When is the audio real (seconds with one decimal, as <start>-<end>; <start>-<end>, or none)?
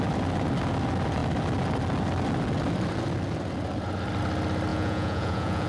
0.0-4.7